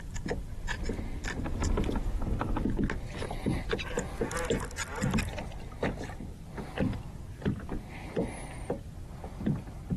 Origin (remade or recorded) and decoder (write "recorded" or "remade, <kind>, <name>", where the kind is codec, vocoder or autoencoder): recorded